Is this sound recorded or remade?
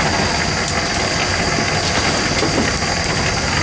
recorded